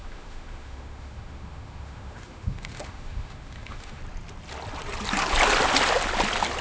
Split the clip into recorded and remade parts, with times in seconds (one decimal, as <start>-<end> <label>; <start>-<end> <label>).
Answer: 0.0-4.0 remade; 4.0-6.6 recorded